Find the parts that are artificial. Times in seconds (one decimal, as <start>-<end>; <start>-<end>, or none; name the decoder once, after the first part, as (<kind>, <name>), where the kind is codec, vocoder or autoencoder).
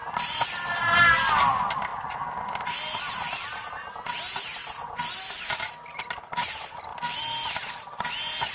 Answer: none